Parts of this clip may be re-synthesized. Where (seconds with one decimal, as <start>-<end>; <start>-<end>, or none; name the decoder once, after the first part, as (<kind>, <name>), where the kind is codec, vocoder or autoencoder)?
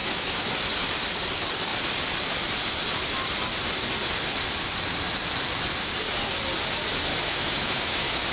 0.0-0.5 (autoencoder, DAC-VAE); 7.1-8.3